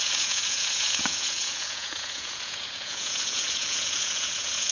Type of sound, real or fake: fake